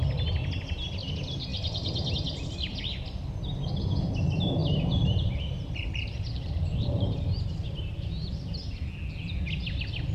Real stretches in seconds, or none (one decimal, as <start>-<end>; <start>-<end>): 0.0-1.5; 2.1-4.6; 7.4-10.1